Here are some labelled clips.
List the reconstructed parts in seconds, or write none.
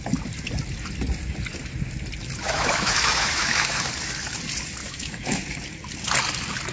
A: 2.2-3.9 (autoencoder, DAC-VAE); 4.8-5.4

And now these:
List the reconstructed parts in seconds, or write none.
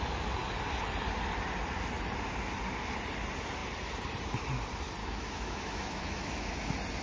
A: 5.0-6.5 (autoencoder, DAC-VAE)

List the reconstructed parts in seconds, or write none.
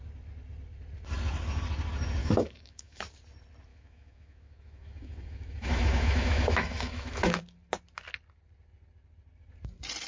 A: 2.2-3.0 (autoencoder, DAC-VAE); 3.7-7.4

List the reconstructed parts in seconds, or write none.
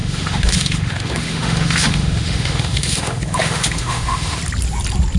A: 0.0-4.4 (autoencoder, DAC-VAE)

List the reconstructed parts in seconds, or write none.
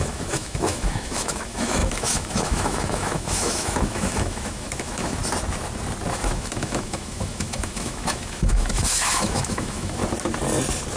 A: 0.0-5.2 (autoencoder, DAC-VAE); 6.1-10.0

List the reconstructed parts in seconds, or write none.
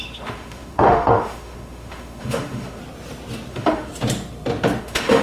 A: 0.0-2.8 (autoencoder, DAC-VAE); 3.5-3.9; 4.8-5.2